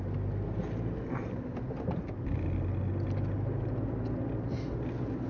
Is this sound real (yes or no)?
yes